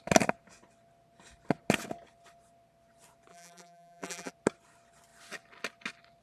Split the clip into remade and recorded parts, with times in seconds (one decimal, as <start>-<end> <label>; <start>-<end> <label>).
0.0-3.3 recorded; 3.3-4.3 remade; 4.3-6.2 recorded